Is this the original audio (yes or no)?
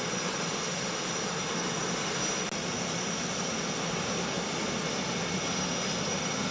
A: yes